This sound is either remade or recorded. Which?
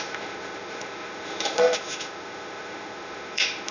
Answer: remade